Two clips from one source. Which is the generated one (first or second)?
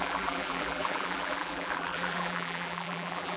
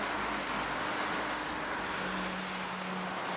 first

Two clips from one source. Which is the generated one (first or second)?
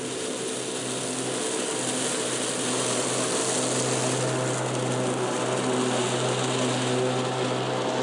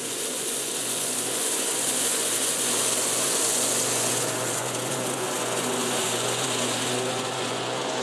second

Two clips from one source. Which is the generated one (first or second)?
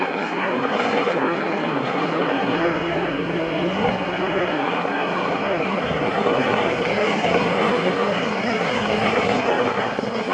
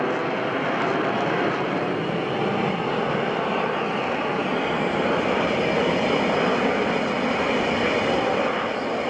first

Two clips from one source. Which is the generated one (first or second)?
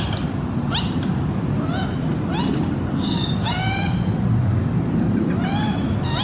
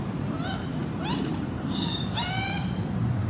second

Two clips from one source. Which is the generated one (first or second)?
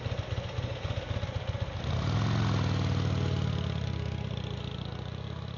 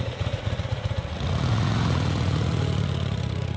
second